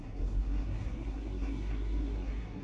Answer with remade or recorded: remade